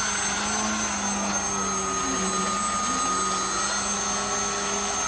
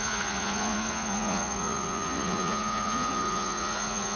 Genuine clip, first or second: first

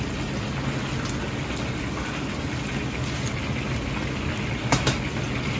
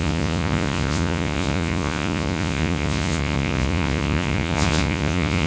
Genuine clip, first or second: first